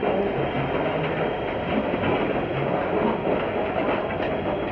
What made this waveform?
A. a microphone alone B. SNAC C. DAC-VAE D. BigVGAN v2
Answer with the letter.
A